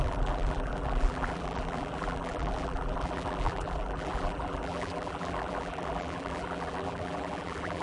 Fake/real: fake